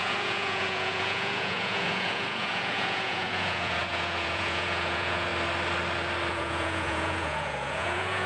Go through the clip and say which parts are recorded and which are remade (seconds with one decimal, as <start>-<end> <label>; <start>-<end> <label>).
0.0-5.3 remade; 5.3-6.3 recorded; 6.3-8.3 remade